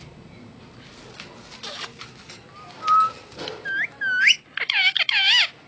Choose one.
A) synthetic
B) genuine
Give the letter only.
B